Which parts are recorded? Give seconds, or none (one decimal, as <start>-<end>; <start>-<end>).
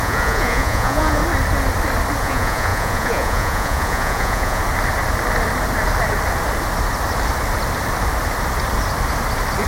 1.2-2.2; 4.6-9.7